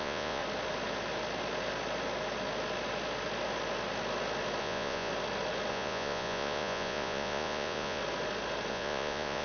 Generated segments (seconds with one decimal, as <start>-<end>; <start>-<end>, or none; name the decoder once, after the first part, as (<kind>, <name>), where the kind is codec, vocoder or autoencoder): 0.0-0.4 (vocoder, Vocos); 4.6-5.1; 5.7-8.0; 8.7-9.4